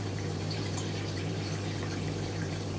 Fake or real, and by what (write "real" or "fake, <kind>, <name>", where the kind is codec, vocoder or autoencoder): fake, vocoder, BigVGAN v2